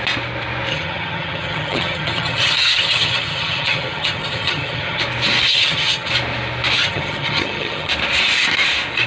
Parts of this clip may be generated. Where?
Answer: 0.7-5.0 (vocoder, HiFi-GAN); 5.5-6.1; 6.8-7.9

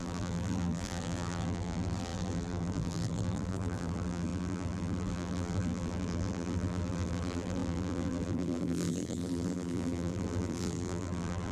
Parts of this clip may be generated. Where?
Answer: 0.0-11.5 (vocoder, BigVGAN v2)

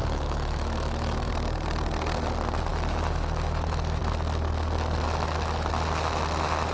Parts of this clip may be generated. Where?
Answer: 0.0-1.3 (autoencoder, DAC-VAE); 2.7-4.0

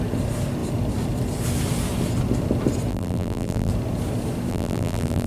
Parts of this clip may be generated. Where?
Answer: 2.9-3.7 (vocoder, BigVGAN v2); 4.5-5.3

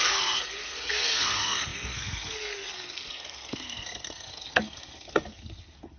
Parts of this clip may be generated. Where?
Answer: 0.0-6.0 (codec, SNAC)